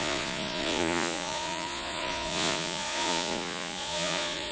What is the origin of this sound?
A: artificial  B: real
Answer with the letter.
A